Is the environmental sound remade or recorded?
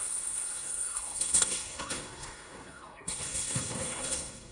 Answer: remade